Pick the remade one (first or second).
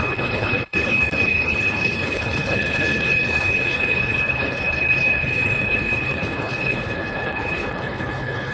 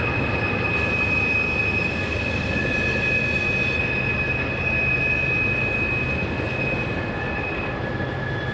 first